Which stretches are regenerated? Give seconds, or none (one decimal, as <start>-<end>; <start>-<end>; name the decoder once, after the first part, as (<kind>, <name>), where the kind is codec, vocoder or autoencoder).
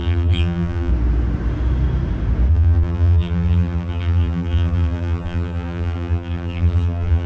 0.0-0.9 (vocoder, BigVGAN v2); 2.5-7.3